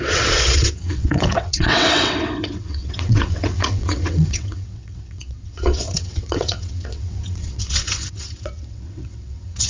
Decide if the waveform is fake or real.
fake